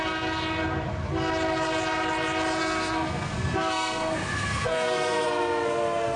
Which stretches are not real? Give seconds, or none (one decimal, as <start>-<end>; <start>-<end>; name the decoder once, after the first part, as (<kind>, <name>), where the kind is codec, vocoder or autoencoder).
2.6-6.2 (codec, SNAC)

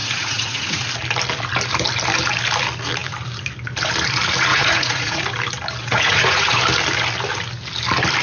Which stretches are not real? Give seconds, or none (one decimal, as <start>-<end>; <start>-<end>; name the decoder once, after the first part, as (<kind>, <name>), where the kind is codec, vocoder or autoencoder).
0.0-0.8 (vocoder, Vocos); 4.5-5.2; 5.8-6.6

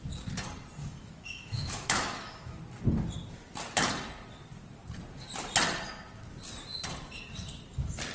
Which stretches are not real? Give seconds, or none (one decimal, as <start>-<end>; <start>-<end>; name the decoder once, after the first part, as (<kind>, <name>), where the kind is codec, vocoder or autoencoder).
0.8-2.6 (autoencoder, DAC-VAE)

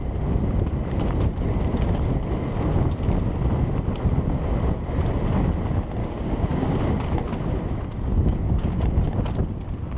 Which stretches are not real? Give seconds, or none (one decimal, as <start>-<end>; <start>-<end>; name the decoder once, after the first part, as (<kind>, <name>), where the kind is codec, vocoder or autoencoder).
6.0-7.0 (codec, DAC); 8.1-8.8

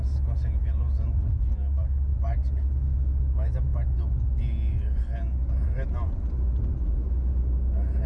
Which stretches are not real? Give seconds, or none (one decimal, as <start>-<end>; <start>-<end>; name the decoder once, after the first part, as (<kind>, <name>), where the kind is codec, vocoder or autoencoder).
none

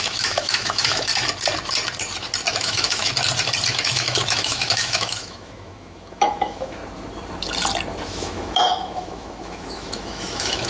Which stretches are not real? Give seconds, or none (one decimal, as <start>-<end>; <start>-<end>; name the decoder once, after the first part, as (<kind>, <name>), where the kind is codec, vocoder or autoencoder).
0.0-1.1 (autoencoder, DAC-VAE); 2.5-3.1; 3.7-6.8; 8.1-10.7

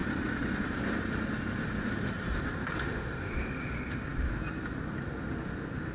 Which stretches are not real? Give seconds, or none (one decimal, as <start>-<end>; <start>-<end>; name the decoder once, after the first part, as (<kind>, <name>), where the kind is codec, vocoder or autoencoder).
2.7-3.3 (autoencoder, DAC-VAE)